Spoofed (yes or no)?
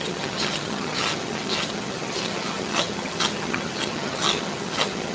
yes